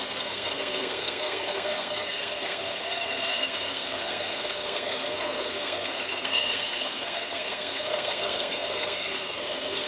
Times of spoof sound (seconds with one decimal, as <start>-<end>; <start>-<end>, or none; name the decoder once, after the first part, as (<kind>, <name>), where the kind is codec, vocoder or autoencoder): 0.0-9.9 (codec, SNAC)